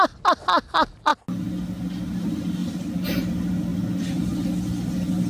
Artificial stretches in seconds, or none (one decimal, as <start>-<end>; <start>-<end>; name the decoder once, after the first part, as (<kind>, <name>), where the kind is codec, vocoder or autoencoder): none